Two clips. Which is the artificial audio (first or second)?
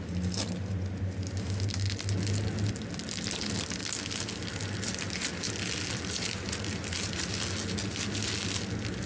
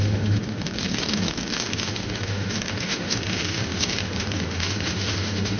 second